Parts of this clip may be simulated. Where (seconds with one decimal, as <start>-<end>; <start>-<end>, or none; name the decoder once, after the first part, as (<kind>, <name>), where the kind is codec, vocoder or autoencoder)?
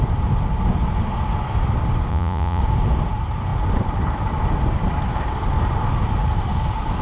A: 2.1-2.6 (vocoder, Vocos)